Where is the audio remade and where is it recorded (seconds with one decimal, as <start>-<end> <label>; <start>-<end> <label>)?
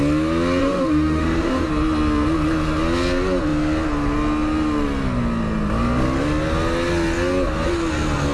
0.0-0.6 recorded; 0.6-1.7 remade; 1.7-8.3 recorded